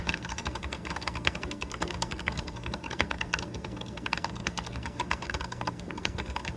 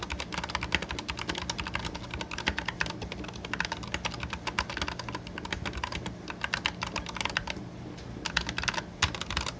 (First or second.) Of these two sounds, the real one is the second